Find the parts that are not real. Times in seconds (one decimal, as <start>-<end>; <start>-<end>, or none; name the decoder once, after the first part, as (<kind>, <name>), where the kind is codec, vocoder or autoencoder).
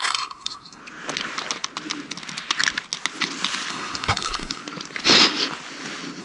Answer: 0.0-0.8 (codec, SNAC); 3.7-4.6